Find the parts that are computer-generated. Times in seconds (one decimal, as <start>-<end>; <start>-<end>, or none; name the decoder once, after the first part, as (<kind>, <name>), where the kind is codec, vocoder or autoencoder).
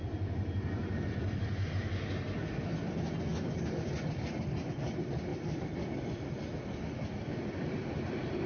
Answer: 0.0-1.7 (vocoder, BigVGAN v2); 5.3-8.1